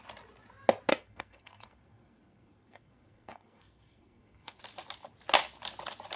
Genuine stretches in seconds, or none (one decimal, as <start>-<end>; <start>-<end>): 0.0-0.9; 4.6-6.2